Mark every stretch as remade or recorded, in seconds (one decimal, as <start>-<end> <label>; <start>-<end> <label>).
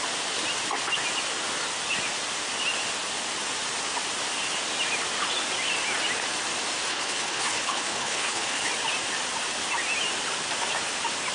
0.0-6.9 recorded; 6.9-8.7 remade; 8.7-11.3 recorded